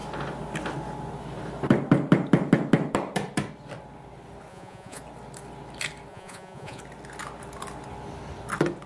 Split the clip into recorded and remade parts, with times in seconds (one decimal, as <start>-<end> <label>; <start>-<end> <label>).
0.0-4.5 recorded; 4.5-5.0 remade; 5.0-6.1 recorded; 6.1-6.8 remade; 6.8-8.9 recorded